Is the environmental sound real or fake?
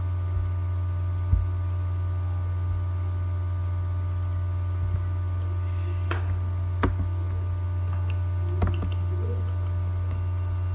real